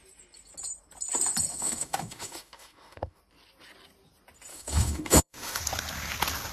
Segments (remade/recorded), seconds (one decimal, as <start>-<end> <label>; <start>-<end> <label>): 0.0-1.5 recorded; 1.5-3.2 remade; 3.2-4.5 recorded; 4.5-5.6 remade; 5.6-6.5 recorded